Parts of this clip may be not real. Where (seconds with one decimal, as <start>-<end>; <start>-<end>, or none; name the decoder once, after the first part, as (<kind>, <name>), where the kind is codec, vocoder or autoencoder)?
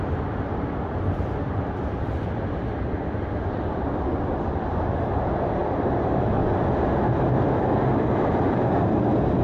none